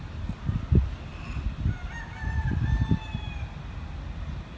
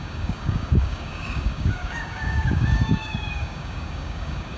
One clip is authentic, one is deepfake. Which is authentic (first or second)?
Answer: first